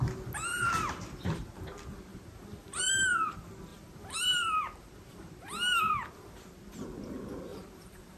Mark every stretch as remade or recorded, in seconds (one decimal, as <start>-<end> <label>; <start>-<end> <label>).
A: 0.0-2.1 recorded; 2.1-3.3 remade; 3.3-3.7 recorded; 3.7-5.8 remade; 5.8-7.5 recorded; 7.5-8.2 remade

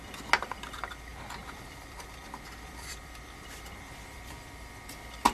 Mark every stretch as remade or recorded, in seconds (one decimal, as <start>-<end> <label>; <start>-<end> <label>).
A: 0.0-1.1 recorded; 1.1-4.3 remade; 4.3-5.3 recorded